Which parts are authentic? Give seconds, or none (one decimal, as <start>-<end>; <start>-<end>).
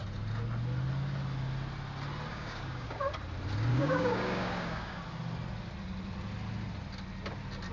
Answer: 0.0-2.3; 3.0-3.7; 5.0-7.7